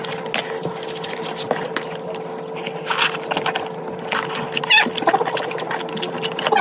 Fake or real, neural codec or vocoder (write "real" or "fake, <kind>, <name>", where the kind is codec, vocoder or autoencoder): real